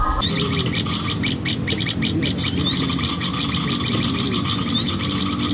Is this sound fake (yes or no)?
no